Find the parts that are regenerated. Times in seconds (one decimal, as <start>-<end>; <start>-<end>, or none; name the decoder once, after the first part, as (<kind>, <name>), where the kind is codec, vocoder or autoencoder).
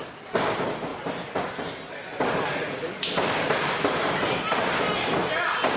0.9-4.1 (vocoder, BigVGAN v2)